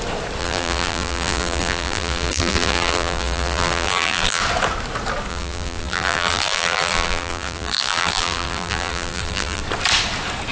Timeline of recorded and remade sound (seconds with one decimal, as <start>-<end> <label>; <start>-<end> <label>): 0.0-0.4 recorded; 0.4-4.4 remade; 4.4-5.3 recorded; 5.3-9.6 remade; 9.6-10.5 recorded